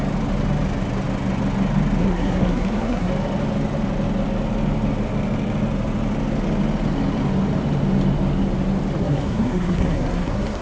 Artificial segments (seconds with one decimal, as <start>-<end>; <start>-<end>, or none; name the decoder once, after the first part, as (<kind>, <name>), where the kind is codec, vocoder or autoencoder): 2.0-3.1 (codec, SNAC); 9.0-10.6